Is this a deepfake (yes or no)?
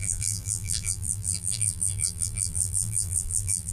yes